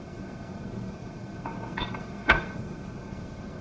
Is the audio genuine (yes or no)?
no